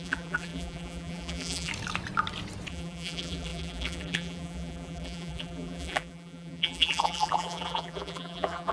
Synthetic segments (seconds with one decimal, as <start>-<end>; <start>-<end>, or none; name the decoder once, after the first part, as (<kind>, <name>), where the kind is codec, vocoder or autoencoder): 0.0-1.7 (vocoder, BigVGAN v2); 2.7-8.7